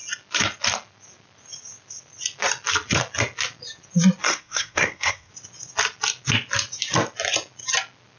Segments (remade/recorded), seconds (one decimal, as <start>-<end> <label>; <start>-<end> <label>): 0.0-4.2 recorded; 4.2-5.3 remade; 5.3-8.2 recorded